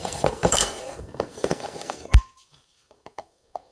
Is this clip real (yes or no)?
no